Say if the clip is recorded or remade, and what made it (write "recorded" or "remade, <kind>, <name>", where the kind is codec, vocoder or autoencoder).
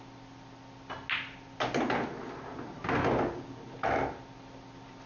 recorded